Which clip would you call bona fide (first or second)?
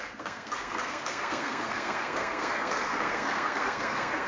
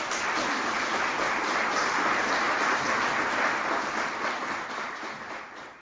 second